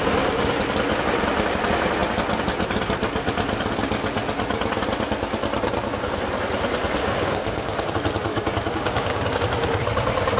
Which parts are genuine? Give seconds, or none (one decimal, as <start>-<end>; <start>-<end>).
0.0-7.0; 7.9-8.3; 9.4-10.4